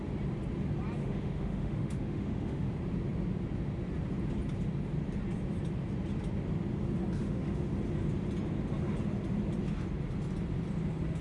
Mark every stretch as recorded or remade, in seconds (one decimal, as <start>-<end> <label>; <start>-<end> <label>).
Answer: 0.0-1.0 recorded; 1.0-2.7 remade; 2.7-7.2 recorded; 7.2-7.7 remade; 7.7-11.2 recorded